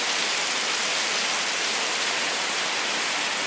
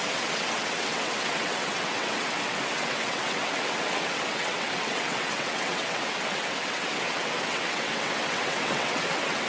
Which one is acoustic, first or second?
first